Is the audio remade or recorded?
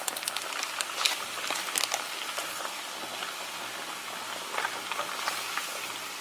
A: recorded